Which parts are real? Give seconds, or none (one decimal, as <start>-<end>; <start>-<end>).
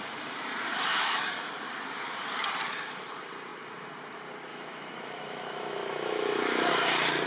0.0-0.9; 1.5-4.5; 6.7-7.3